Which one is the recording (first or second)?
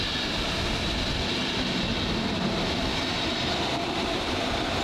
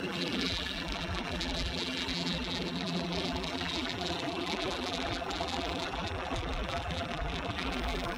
first